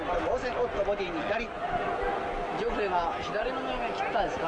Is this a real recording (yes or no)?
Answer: yes